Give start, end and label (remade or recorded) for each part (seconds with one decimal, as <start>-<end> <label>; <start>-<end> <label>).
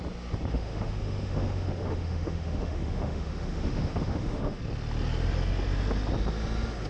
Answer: 0.0-0.5 recorded; 0.5-4.6 remade; 4.6-6.9 recorded